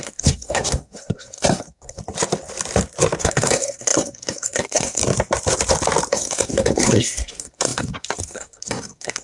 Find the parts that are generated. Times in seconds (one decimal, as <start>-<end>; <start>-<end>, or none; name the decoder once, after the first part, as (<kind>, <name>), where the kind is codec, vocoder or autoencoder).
0.0-2.0 (codec, SNAC); 3.2-5.0; 6.1-9.2

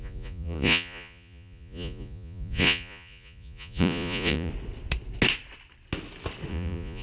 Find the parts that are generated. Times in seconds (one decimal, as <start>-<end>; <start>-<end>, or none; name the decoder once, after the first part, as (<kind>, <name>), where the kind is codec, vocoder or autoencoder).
0.0-4.5 (vocoder, Vocos); 6.5-7.0

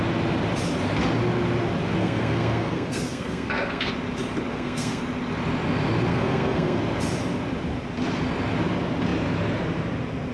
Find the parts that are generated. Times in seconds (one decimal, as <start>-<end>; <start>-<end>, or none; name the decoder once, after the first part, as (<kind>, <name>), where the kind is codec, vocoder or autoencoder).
2.0-3.9 (codec, SNAC); 4.5-5.0; 6.1-6.8

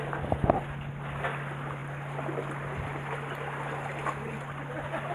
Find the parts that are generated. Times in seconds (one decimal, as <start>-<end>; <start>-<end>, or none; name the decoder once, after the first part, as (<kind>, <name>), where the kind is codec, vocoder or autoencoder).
none

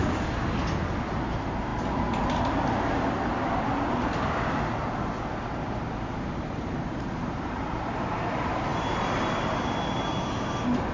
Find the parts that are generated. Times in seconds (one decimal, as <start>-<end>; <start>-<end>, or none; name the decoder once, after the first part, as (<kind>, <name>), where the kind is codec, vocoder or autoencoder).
1.0-1.7 (vocoder, BigVGAN v2); 5.3-10.9

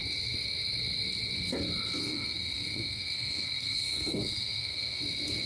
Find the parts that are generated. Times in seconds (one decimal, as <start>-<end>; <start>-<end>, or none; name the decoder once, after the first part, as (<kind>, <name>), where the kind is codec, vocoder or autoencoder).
2.0-5.0 (codec, SNAC)

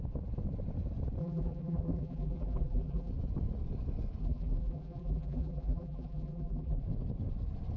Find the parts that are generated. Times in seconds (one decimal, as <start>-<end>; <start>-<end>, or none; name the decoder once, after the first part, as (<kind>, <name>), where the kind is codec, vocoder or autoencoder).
1.2-3.1 (vocoder, BigVGAN v2); 4.2-6.8

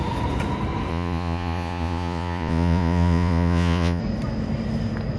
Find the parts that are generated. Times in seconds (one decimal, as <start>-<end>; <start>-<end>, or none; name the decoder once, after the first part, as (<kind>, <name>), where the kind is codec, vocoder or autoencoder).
0.9-4.0 (vocoder, Vocos)